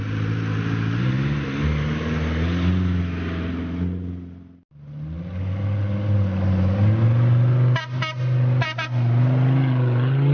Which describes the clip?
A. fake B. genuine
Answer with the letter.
B